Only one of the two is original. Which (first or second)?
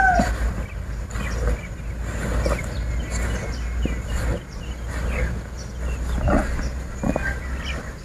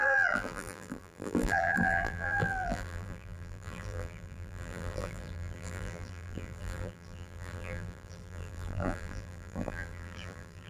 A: first